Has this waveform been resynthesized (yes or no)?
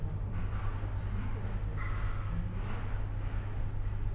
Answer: no